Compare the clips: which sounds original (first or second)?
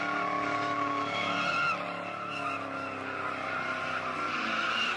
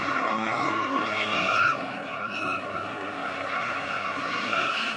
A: first